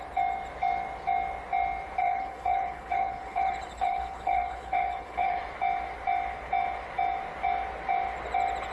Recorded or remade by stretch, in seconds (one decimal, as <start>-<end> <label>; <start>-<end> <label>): 0.0-2.0 recorded; 2.0-5.4 remade; 5.4-8.7 recorded